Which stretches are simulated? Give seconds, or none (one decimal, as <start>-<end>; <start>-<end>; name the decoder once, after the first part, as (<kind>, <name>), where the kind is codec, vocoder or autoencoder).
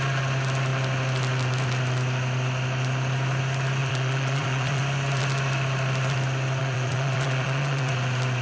3.8-4.8 (vocoder, Vocos); 6.6-7.9